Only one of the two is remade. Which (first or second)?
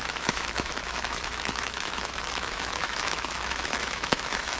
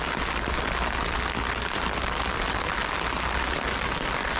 first